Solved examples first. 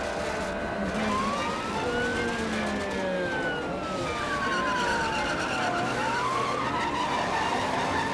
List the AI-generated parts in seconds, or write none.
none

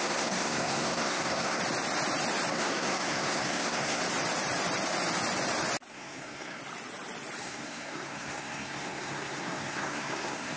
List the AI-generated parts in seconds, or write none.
0.0-1.6 (codec, SNAC); 2.5-4.0; 5.9-6.6; 7.4-10.6

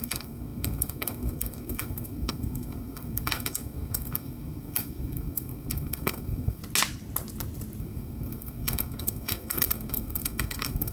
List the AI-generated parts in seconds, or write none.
0.0-6.6 (codec, SNAC); 7.8-10.9

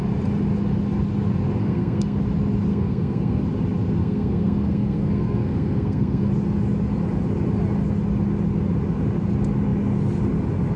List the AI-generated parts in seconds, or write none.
1.6-2.2 (codec, SNAC); 2.7-3.4; 4.0-6.3

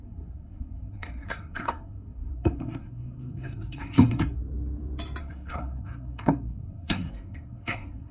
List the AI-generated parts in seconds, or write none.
0.0-4.4 (codec, SNAC); 5.2-8.1

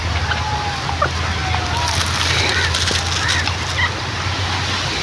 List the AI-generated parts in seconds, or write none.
none

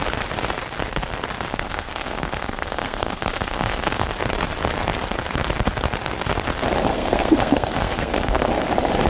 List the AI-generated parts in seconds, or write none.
1.5-4.1 (codec, SNAC); 6.9-8.5